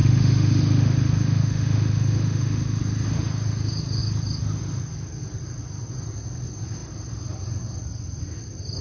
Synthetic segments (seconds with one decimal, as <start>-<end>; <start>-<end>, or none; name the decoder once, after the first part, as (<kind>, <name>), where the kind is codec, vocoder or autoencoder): 0.0-2.8 (autoencoder, DAC-VAE)